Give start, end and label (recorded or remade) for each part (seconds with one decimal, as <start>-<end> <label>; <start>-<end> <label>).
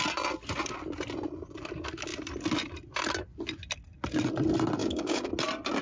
0.0-4.8 recorded; 4.8-5.3 remade; 5.3-5.8 recorded